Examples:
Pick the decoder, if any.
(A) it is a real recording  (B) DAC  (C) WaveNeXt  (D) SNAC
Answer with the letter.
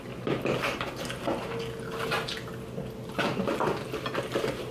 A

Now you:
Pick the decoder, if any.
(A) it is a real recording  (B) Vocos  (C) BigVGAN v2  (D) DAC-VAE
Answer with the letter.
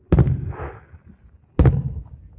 A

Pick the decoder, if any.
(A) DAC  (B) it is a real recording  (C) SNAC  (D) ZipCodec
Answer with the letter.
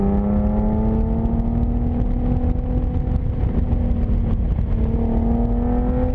B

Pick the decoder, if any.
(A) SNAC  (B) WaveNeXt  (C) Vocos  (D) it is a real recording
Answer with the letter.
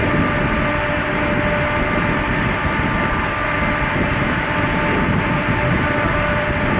D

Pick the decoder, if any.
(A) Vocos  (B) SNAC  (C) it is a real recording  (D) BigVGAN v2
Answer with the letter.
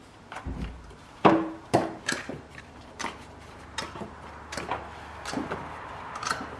D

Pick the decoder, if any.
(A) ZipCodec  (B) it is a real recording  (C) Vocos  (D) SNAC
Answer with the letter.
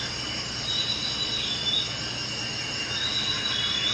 B